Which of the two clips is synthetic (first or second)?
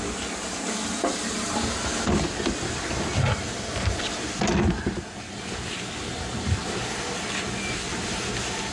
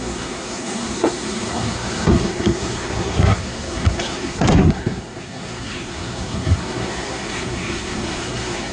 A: second